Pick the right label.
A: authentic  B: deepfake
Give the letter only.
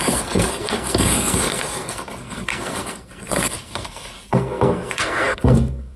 B